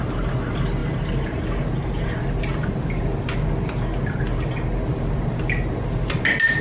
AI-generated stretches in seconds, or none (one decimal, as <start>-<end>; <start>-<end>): none